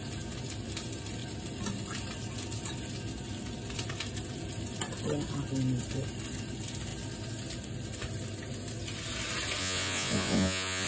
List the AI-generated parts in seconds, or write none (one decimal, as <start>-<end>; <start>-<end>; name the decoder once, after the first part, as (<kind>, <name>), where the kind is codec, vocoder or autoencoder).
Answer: 9.6-10.9 (vocoder, Vocos)